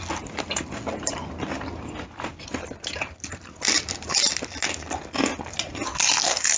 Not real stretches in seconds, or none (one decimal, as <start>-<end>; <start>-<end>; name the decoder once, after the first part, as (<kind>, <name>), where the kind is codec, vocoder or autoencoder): 2.3-4.2 (vocoder, BigVGAN v2)